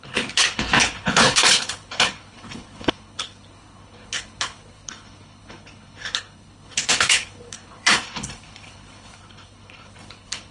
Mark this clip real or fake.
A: fake